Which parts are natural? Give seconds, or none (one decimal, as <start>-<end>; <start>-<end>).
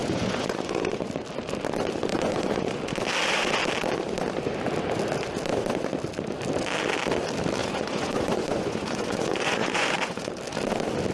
1.1-2.1; 2.8-7.6; 10.3-11.1